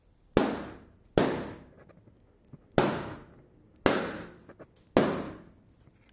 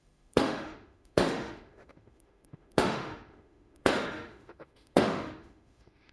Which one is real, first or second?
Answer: first